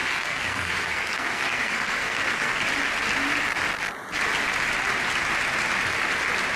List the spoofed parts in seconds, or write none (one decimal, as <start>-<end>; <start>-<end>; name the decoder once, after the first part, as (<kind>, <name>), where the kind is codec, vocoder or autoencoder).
0.0-2.6 (codec, SNAC)